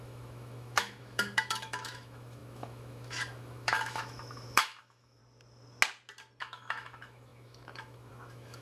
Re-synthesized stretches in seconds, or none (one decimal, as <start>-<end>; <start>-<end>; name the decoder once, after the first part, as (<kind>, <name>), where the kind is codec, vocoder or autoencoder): 0.0-5.2 (autoencoder, DAC-VAE); 6.4-8.6